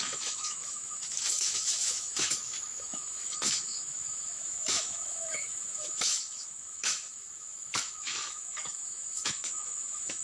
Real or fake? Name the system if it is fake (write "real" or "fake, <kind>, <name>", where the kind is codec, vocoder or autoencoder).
fake, autoencoder, DAC-VAE